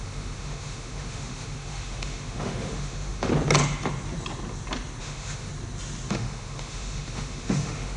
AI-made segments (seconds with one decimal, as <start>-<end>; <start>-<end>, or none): 0.0-3.3; 5.0-5.5; 6.1-8.0